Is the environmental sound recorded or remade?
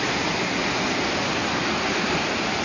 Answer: recorded